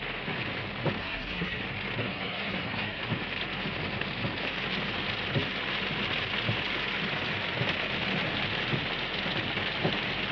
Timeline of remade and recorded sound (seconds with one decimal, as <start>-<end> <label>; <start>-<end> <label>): 0.0-1.0 recorded; 1.0-1.6 remade; 1.6-2.0 recorded; 2.0-3.0 remade; 3.0-10.3 recorded